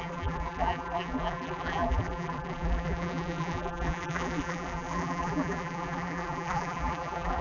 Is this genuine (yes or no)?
no